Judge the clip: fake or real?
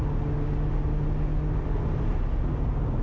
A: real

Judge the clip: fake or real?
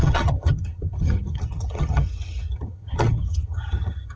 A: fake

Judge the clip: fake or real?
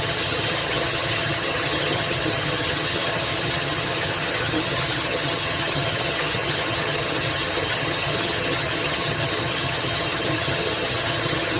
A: fake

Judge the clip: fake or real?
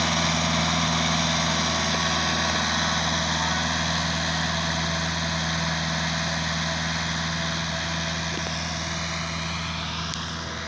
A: real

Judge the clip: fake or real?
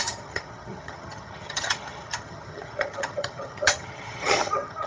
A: fake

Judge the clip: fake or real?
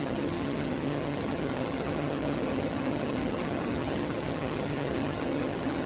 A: fake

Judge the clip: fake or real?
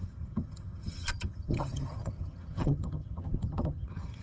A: fake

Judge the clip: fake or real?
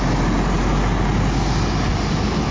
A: real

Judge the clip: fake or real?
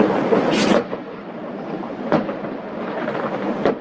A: real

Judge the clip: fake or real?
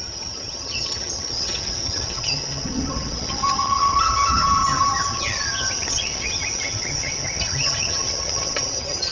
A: fake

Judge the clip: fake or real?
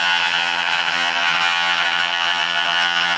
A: fake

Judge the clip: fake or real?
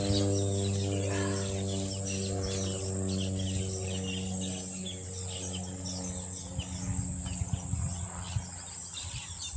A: real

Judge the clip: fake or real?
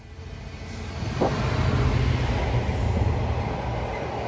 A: real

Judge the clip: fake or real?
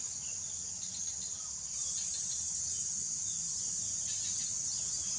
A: real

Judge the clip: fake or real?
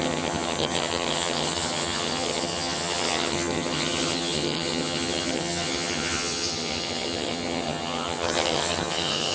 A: fake